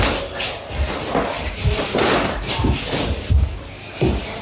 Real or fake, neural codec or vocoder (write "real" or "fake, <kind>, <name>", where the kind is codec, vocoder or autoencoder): real